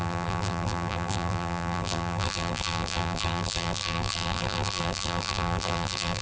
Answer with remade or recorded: remade